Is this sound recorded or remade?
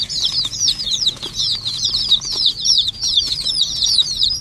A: remade